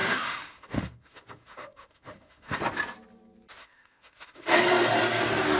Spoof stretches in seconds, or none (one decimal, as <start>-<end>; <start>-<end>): 0.0-2.6; 3.6-4.6